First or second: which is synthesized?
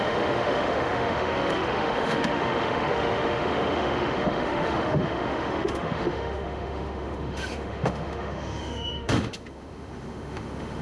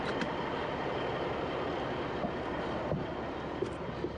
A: first